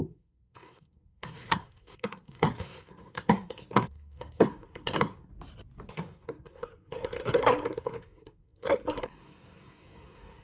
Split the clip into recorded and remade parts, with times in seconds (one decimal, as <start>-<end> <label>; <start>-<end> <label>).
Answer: 0.0-5.3 remade; 5.3-5.9 recorded; 5.9-10.4 remade